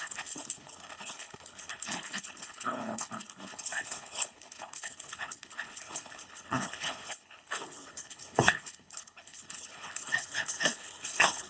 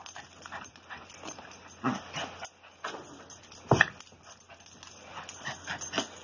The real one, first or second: second